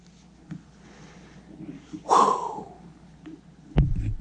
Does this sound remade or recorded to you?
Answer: recorded